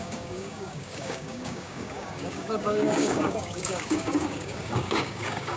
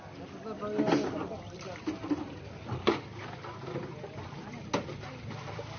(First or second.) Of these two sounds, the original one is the second